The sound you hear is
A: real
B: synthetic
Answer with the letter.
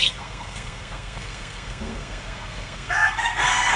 B